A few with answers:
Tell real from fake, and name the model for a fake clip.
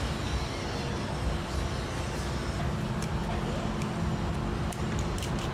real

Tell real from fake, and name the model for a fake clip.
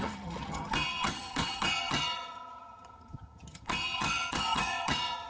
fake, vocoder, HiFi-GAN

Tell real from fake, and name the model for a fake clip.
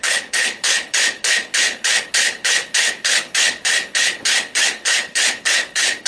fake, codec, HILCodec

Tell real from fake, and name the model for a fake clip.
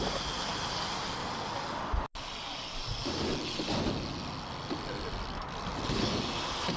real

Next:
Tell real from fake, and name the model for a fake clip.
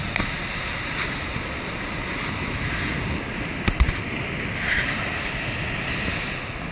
real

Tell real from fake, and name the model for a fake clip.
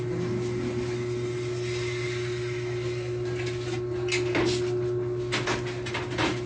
real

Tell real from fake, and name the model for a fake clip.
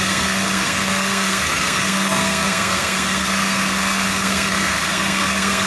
fake, codec, SNAC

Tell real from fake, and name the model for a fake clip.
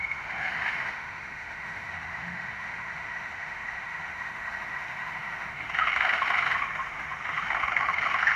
fake, autoencoder, DAC-VAE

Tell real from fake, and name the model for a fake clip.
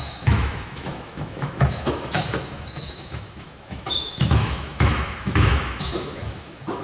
fake, autoencoder, DAC-VAE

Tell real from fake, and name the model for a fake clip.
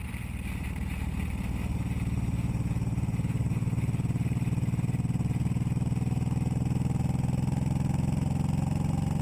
real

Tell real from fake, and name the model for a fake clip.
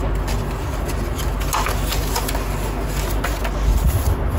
real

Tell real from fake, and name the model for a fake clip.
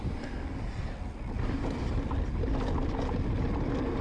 real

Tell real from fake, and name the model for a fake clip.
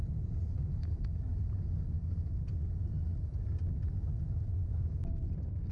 real